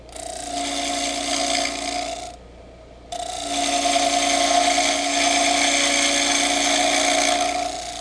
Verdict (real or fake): real